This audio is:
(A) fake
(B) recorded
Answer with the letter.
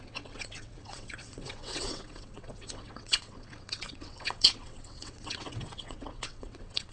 A